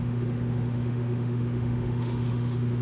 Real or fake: fake